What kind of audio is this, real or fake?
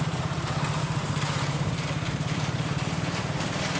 fake